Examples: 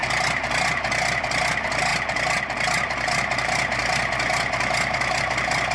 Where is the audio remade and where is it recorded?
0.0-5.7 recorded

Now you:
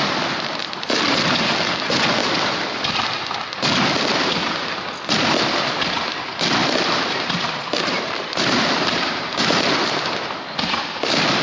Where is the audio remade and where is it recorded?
0.0-6.6 recorded; 6.6-10.0 remade; 10.0-11.4 recorded

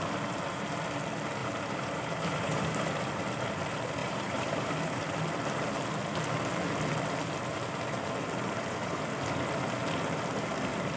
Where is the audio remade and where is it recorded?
0.0-1.4 recorded; 1.4-2.9 remade; 2.9-4.0 recorded; 4.0-5.0 remade; 5.0-8.4 recorded; 8.4-9.0 remade; 9.0-11.0 recorded